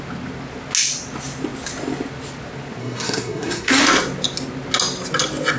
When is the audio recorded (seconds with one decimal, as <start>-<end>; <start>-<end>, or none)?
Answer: 0.0-2.8; 3.8-5.6